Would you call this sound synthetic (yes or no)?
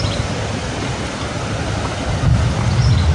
no